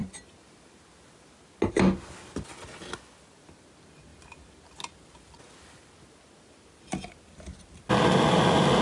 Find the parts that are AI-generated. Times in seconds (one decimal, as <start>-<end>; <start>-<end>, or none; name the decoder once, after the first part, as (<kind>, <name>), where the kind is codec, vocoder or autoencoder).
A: none

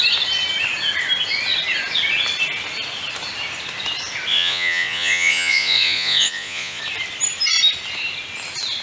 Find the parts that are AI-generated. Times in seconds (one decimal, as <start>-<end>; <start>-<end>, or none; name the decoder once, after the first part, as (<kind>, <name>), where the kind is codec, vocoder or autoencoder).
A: 4.3-6.8 (vocoder, Vocos)